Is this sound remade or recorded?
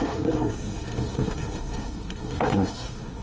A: remade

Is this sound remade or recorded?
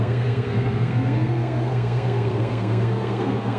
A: remade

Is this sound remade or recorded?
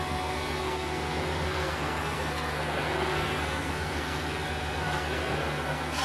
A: remade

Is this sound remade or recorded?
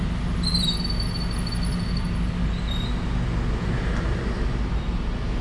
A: recorded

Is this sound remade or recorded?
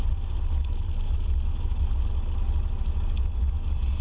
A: recorded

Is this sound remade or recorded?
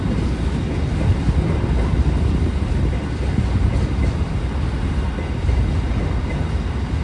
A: recorded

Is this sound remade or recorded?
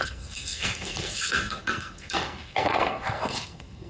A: remade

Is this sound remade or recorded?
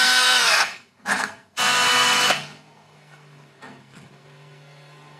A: remade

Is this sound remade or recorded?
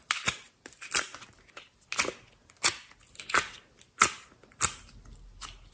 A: recorded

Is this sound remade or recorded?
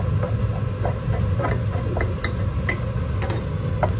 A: recorded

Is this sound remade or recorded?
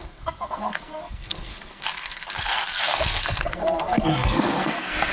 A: remade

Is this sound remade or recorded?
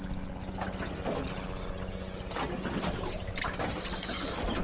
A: recorded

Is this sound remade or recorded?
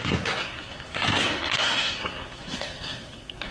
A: remade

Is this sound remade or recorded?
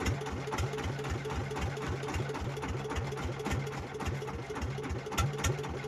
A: recorded